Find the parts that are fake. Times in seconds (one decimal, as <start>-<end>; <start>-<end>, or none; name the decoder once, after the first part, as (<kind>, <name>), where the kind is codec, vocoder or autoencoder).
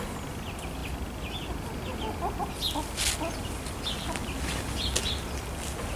none